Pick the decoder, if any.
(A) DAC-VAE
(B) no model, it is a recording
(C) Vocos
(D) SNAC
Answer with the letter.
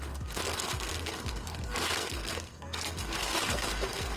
D